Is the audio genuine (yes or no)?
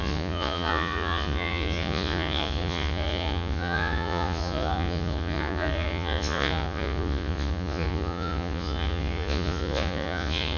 no